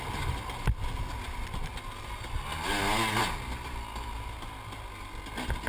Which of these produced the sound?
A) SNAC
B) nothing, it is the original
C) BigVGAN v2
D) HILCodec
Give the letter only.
B